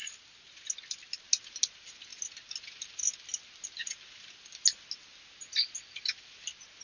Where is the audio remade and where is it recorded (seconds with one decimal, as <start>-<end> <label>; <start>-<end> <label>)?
0.0-6.8 recorded